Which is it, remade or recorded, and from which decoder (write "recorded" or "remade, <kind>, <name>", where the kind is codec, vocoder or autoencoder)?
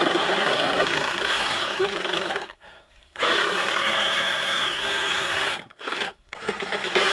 remade, codec, SNAC